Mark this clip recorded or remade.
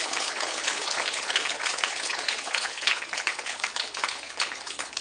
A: remade